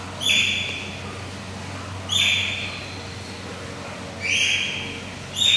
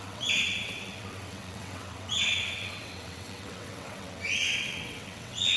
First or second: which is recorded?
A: first